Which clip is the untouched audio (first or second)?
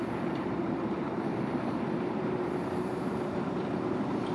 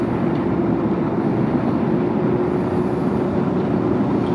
second